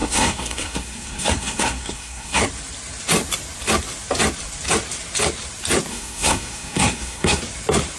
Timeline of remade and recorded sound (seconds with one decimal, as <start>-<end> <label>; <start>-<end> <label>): 0.0-2.4 remade; 2.4-5.9 recorded; 5.9-7.4 remade; 7.4-8.0 recorded